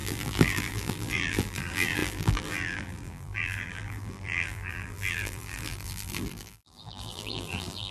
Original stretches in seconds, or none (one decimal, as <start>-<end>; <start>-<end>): none